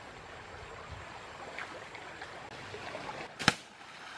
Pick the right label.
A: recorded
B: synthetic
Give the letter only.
A